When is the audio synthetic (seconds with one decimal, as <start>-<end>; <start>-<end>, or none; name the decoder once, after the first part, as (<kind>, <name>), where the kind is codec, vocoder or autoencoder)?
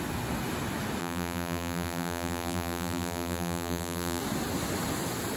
1.0-4.2 (vocoder, BigVGAN v2)